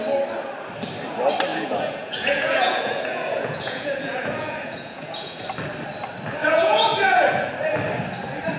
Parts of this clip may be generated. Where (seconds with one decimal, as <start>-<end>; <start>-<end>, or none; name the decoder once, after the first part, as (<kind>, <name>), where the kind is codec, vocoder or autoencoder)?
1.5-5.4 (vocoder, Vocos); 6.4-7.5